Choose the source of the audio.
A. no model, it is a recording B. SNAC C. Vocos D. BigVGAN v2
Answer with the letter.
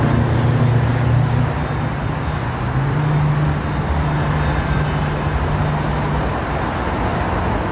A